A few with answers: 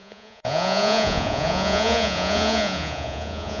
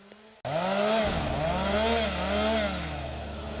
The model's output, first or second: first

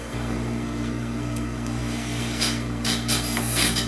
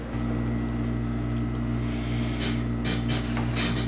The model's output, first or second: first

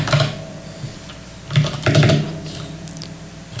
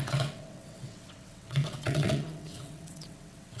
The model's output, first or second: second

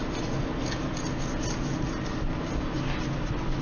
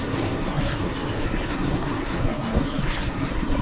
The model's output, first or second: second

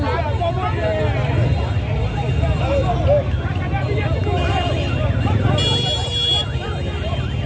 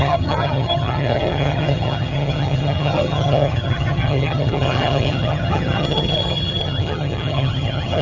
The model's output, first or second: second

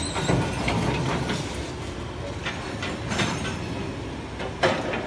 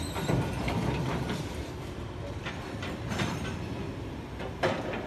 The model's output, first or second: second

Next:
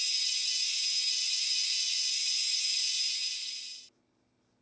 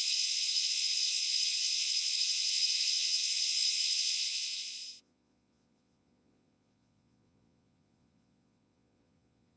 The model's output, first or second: second